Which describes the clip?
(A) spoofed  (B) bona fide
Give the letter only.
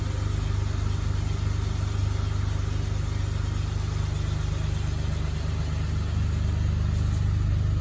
B